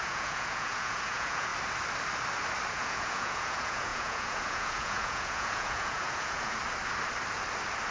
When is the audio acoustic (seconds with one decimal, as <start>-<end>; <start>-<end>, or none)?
1.5-2.7; 6.6-7.9